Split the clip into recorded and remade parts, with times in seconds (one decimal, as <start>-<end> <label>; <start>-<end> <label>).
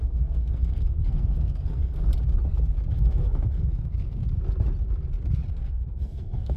0.0-2.1 remade; 2.1-2.9 recorded; 2.9-4.2 remade; 4.2-5.5 recorded; 5.5-6.6 remade